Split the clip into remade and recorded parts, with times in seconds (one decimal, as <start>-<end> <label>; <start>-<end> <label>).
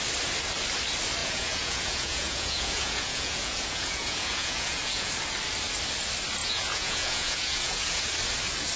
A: 0.0-1.2 recorded; 1.2-5.1 remade; 5.1-6.4 recorded; 6.4-8.0 remade; 8.0-8.8 recorded